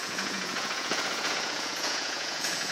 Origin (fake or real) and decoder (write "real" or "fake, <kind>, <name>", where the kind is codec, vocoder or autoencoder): fake, vocoder, Vocos